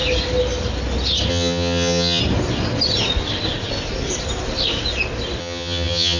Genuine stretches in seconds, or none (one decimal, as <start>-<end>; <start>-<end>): 0.0-1.3; 2.2-5.4